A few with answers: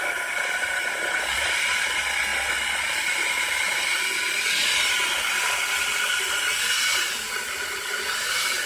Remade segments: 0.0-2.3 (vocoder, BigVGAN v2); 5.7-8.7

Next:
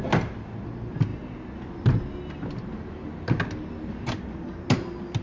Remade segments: none

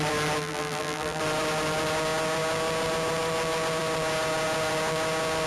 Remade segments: 0.4-1.2 (vocoder, BigVGAN v2)

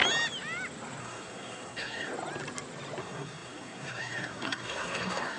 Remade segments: 1.0-2.1 (codec, SNAC); 3.0-5.4

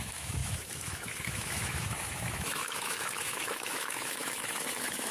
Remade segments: 0.0-5.1 (autoencoder, DAC-VAE)

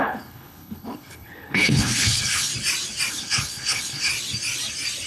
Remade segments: 0.0-2.5 (codec, HILCodec); 3.1-4.1